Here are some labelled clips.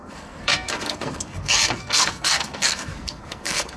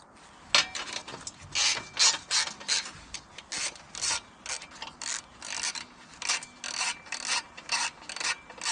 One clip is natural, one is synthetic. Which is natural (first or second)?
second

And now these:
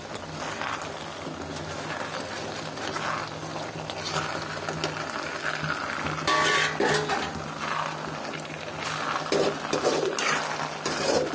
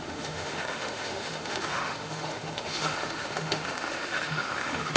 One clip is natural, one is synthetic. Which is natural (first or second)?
first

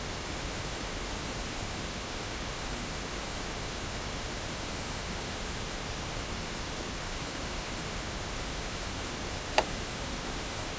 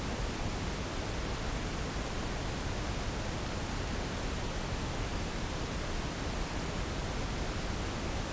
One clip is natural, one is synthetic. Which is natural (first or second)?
second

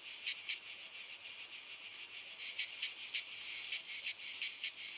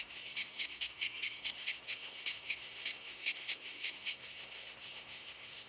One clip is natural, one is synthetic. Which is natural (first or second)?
first